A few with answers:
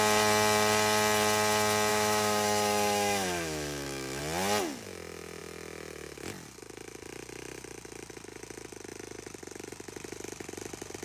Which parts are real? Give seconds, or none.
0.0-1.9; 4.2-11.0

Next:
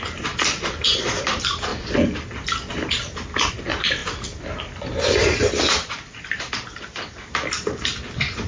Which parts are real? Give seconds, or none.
0.0-8.5